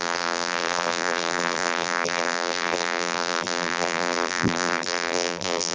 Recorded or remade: remade